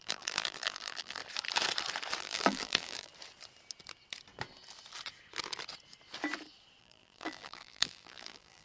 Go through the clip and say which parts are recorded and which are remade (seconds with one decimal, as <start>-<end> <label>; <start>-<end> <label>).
0.0-1.2 remade; 1.2-2.2 recorded; 2.2-3.1 remade; 3.1-6.8 recorded; 6.8-8.6 remade

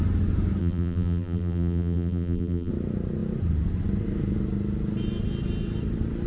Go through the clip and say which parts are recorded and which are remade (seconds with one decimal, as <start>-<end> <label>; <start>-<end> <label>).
0.0-0.6 recorded; 0.6-2.7 remade; 2.7-6.3 recorded

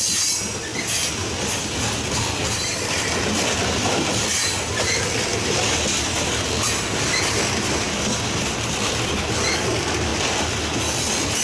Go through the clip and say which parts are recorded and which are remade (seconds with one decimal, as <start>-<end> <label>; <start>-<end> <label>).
0.0-11.4 recorded

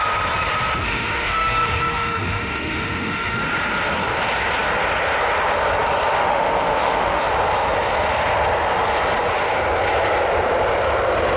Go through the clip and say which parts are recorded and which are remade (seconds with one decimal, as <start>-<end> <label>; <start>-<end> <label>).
0.0-0.8 recorded; 0.8-3.4 remade; 3.4-6.2 recorded; 6.2-7.2 remade; 7.2-11.4 recorded